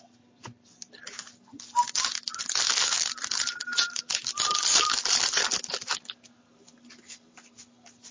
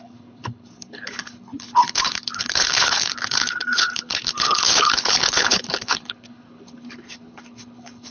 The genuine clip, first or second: first